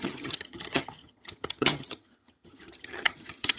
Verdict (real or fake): fake